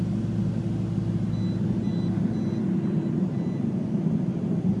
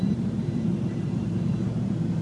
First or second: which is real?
first